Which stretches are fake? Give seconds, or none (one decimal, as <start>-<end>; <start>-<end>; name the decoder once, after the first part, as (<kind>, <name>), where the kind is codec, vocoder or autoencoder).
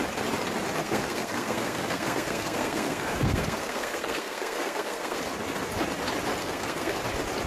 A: 0.8-5.2 (codec, SNAC); 6.4-7.0